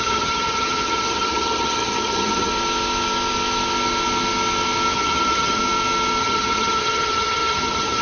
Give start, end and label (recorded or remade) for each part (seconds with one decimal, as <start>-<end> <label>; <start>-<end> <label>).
0.0-2.5 remade; 2.5-4.9 recorded; 4.9-5.6 remade; 5.6-6.2 recorded; 6.2-8.0 remade